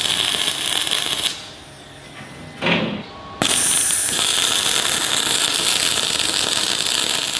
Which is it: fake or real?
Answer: real